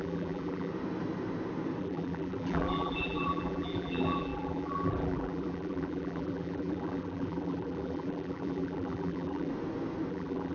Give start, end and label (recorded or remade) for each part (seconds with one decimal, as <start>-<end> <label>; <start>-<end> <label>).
0.0-0.7 remade; 0.7-1.8 recorded; 1.8-9.5 remade; 9.5-10.1 recorded; 10.1-10.5 remade